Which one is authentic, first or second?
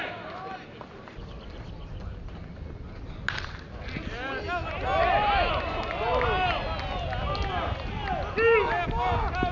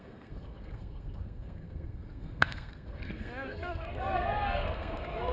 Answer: first